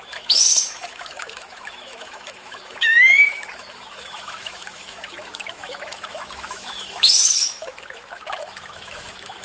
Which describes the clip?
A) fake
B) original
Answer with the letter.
A